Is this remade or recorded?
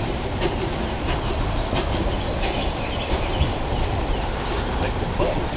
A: remade